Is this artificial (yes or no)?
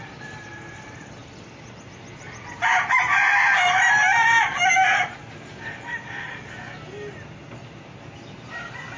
no